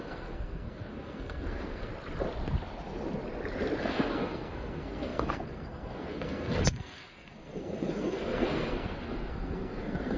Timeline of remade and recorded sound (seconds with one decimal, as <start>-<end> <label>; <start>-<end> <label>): 0.0-1.9 remade; 1.9-3.8 recorded; 3.8-10.2 remade